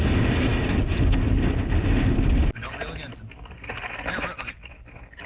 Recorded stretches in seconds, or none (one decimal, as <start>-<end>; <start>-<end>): 0.0-5.3